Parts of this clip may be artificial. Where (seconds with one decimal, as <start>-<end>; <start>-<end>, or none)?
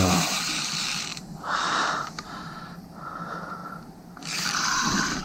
0.0-5.2